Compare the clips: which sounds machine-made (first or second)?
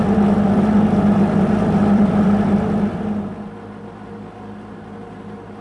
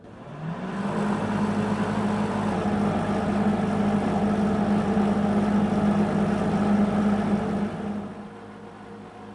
first